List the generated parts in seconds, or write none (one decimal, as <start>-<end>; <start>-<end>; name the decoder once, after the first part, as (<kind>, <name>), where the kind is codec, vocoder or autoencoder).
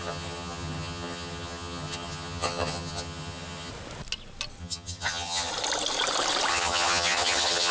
0.0-3.7 (vocoder, HiFi-GAN); 4.6-5.5; 6.5-7.7